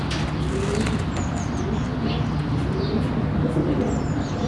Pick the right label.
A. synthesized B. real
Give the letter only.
B